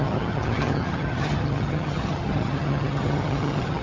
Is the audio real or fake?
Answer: fake